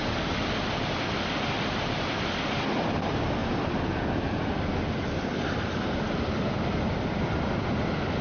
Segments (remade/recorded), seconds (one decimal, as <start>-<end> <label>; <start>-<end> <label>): 0.0-8.2 recorded